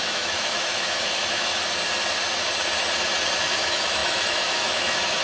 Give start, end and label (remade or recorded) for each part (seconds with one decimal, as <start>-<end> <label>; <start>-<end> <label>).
0.0-1.5 remade; 1.5-3.4 recorded; 3.4-5.2 remade